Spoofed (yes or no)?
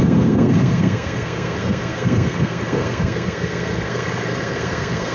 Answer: yes